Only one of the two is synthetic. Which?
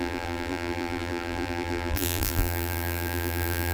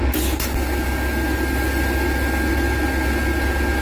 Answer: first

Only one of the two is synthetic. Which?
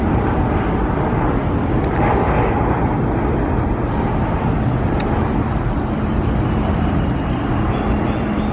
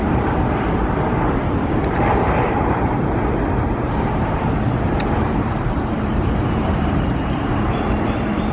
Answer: second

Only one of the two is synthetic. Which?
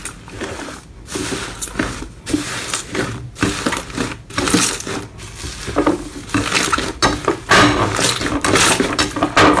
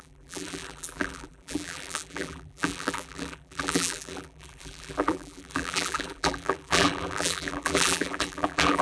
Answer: second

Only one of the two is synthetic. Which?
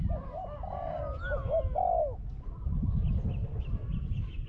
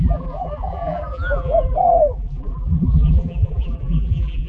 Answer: second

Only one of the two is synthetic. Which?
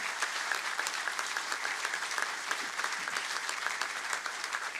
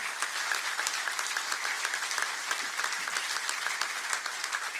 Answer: first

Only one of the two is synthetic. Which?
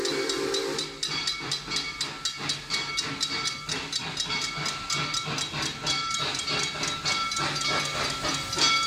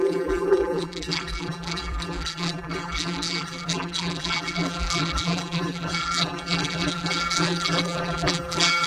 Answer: second